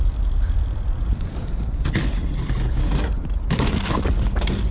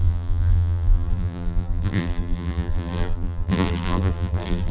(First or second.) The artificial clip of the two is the second